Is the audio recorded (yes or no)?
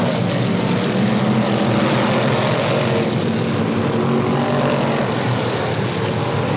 yes